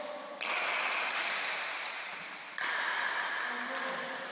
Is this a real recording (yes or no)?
yes